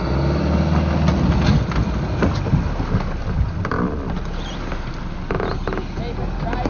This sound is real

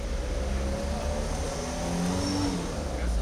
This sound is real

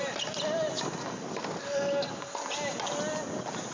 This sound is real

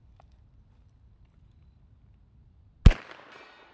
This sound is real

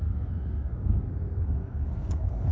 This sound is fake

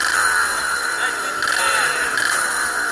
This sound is fake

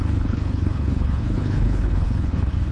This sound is fake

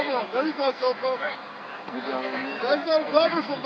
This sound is fake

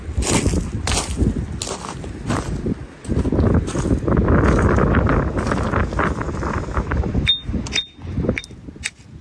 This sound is real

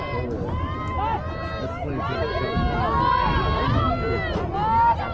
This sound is real